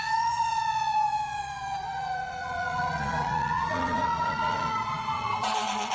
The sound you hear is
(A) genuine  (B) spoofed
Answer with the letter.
B